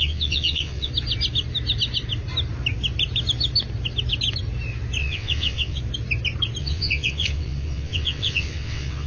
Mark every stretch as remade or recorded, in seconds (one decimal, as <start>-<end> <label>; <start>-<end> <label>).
0.0-0.9 remade; 0.9-5.0 recorded; 5.0-5.8 remade; 5.8-6.6 recorded; 6.6-9.1 remade